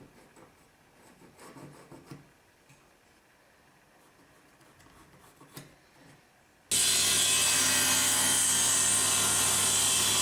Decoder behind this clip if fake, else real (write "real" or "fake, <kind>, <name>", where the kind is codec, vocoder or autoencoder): real